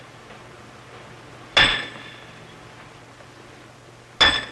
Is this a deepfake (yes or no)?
no